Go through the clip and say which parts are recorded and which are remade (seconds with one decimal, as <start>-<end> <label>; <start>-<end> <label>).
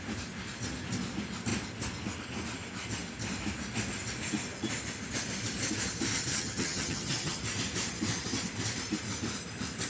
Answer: 0.0-6.3 recorded; 6.3-7.4 remade; 7.4-9.9 recorded